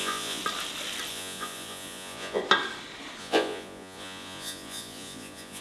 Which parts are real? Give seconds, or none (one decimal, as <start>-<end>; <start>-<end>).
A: 0.4-1.1; 2.4-3.2